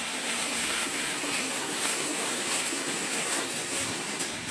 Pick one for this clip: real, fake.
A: fake